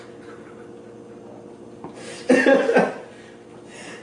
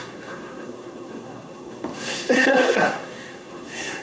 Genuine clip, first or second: first